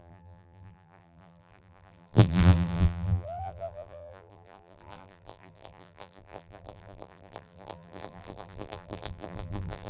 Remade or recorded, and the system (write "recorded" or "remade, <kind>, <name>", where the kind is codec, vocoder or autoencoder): remade, vocoder, BigVGAN v2